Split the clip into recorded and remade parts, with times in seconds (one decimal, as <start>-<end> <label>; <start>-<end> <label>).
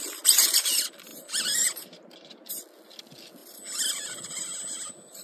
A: 0.0-1.1 recorded; 1.1-2.5 remade; 2.5-5.2 recorded